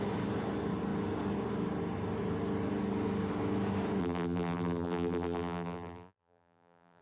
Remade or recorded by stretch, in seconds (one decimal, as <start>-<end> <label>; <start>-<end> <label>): 0.0-4.0 recorded; 4.0-7.0 remade